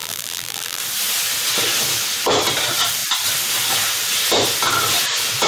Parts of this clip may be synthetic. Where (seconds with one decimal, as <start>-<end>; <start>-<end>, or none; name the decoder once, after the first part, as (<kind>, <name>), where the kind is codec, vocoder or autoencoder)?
0.0-0.8 (vocoder, BigVGAN v2)